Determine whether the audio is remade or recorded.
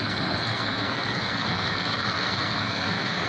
remade